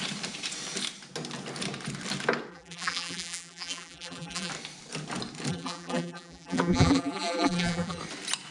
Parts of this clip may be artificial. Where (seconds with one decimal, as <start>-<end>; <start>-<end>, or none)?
2.5-4.5; 5.5-8.0